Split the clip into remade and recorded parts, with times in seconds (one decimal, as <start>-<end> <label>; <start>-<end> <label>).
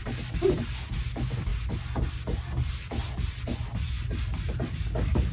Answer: 0.0-1.1 recorded; 1.1-1.5 remade; 1.5-4.7 recorded; 4.7-5.3 remade